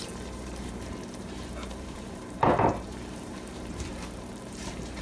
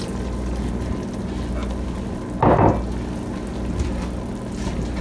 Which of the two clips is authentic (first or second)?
second